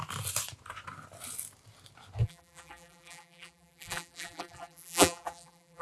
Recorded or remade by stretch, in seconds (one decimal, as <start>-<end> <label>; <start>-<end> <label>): 0.0-2.2 recorded; 2.2-5.8 remade